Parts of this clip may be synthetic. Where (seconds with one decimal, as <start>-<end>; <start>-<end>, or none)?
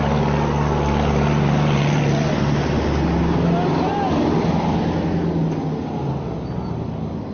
none